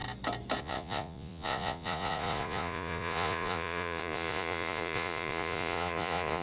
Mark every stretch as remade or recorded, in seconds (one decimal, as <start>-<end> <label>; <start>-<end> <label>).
0.0-0.6 recorded; 0.6-6.4 remade